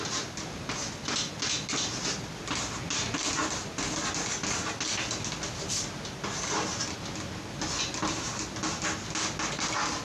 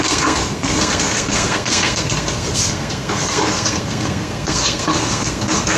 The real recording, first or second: first